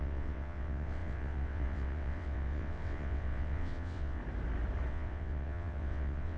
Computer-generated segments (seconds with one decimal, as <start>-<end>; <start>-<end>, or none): 0.0-4.2; 4.9-6.4